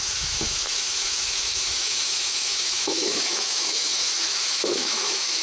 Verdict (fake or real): fake